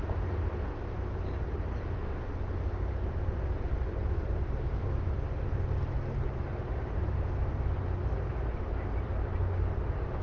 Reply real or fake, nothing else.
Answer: real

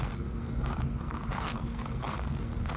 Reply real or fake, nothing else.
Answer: fake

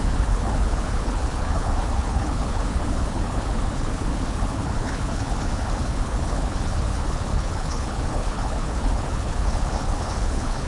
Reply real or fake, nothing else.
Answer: fake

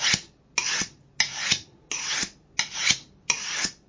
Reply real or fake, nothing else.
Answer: real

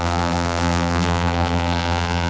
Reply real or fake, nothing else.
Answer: fake